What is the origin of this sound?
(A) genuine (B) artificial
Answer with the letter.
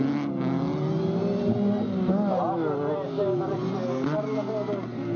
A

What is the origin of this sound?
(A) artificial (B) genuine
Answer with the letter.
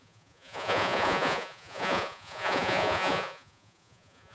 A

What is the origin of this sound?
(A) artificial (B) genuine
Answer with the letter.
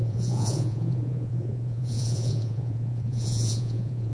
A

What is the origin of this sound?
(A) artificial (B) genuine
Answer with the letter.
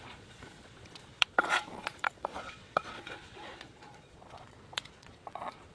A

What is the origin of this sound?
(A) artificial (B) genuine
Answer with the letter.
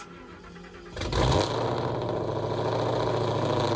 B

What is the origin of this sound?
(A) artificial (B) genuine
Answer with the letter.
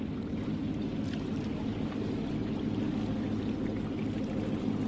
B